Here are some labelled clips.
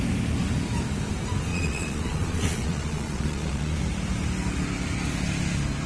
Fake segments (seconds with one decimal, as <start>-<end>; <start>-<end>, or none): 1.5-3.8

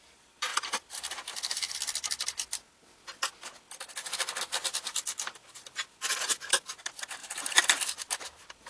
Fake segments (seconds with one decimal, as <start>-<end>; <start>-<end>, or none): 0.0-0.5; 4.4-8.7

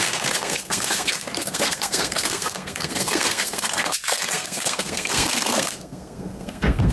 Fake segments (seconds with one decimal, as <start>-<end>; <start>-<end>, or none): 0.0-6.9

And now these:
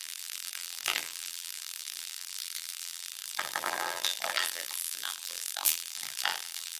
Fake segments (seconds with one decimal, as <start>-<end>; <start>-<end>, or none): 0.0-6.8

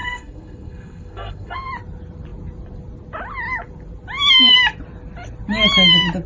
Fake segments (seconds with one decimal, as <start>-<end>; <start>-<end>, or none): 0.0-1.7

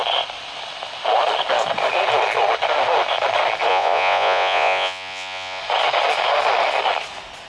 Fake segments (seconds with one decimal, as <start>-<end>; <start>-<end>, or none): 3.7-5.6

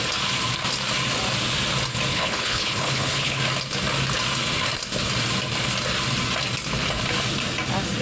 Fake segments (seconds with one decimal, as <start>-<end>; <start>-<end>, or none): 2.1-3.4